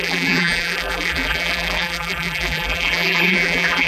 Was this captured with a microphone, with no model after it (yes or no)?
no